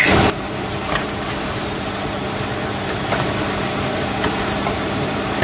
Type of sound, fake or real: fake